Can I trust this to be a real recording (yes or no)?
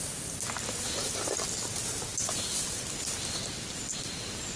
yes